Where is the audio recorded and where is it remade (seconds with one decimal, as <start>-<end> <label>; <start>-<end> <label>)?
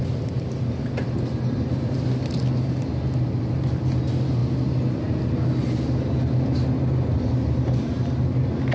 0.0-8.7 recorded